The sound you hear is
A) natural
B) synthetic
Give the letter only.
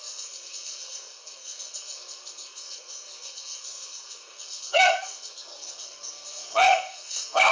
B